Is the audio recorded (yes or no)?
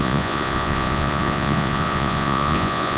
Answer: no